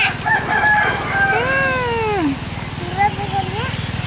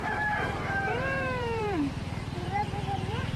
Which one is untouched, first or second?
first